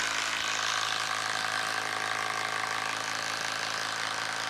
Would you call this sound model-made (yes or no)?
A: no